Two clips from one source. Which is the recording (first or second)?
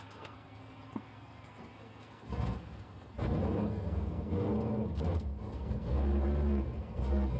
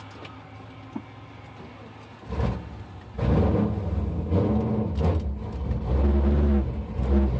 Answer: second